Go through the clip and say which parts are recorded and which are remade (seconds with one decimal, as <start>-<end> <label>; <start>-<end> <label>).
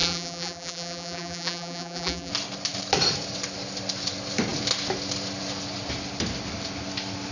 0.0-2.3 remade; 2.3-7.3 recorded